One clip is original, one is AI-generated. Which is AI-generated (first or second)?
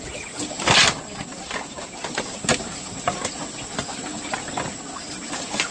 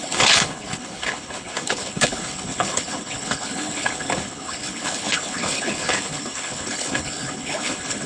second